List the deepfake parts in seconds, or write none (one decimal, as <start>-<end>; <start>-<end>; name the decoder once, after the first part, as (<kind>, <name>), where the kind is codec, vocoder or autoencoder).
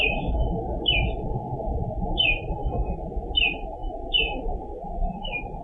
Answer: none